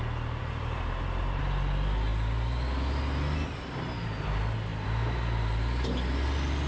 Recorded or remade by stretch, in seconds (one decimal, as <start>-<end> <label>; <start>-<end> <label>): 0.0-0.4 recorded; 0.4-1.4 remade; 1.4-6.7 recorded